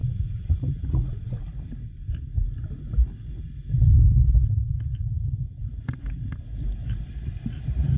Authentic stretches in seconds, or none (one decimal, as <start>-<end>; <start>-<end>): 1.4-8.0